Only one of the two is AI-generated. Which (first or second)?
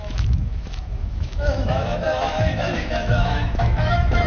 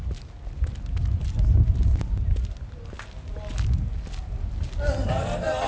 first